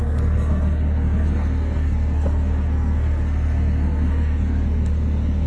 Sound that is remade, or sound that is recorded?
remade